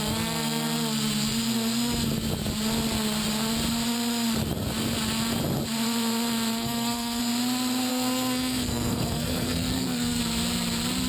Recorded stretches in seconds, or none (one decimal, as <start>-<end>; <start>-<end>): 0.0-6.6; 7.2-7.9; 10.2-11.1